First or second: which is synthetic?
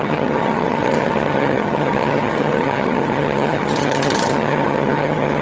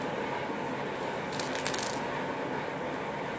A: first